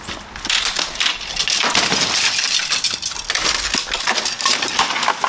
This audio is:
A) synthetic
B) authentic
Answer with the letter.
B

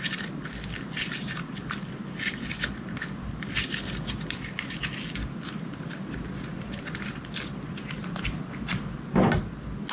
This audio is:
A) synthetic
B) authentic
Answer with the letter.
B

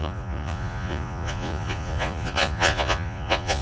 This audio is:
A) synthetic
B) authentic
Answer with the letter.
A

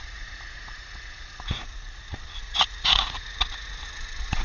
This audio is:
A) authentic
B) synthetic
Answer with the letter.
B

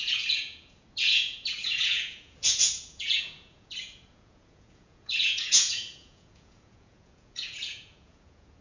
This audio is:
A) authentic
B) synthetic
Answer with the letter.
B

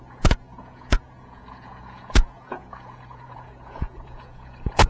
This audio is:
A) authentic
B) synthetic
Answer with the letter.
B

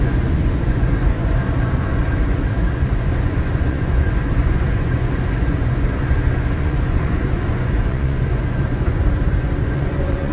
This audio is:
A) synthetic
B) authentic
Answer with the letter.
A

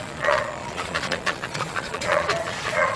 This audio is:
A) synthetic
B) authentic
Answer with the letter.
A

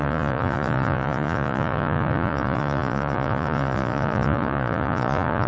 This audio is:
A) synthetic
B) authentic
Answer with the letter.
A